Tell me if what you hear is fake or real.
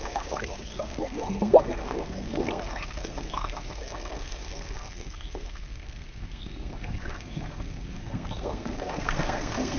fake